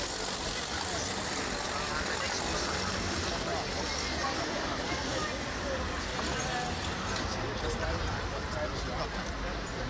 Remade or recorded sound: recorded